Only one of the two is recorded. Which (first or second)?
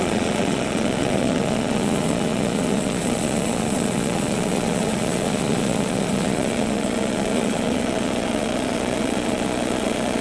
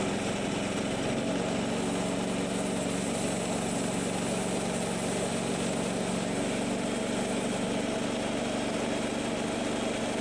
second